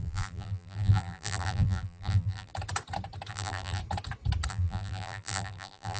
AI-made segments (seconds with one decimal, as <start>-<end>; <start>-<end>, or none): 0.0-2.5; 3.3-3.8; 4.5-6.0